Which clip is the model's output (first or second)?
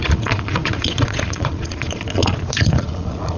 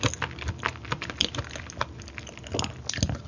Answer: first